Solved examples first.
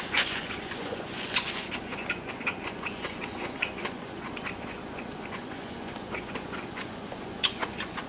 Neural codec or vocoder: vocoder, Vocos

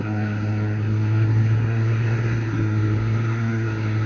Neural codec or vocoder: codec, SNAC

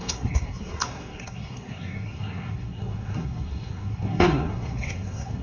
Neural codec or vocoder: codec, SNAC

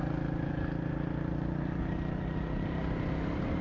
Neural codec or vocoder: none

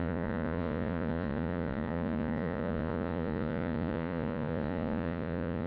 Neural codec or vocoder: vocoder, Vocos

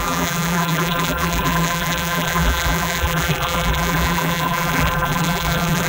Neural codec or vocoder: vocoder, BigVGAN v2